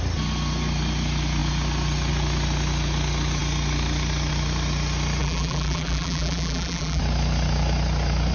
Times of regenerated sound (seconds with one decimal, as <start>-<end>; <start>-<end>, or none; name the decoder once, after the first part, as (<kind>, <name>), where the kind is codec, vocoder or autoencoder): 5.2-7.0 (vocoder, BigVGAN v2)

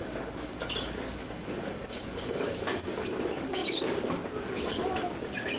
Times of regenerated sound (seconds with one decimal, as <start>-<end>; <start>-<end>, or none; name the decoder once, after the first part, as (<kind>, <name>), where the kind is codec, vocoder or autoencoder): 0.0-5.6 (codec, DAC)

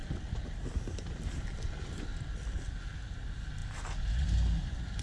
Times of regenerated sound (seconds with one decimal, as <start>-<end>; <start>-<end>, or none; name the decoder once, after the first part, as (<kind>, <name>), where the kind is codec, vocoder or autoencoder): none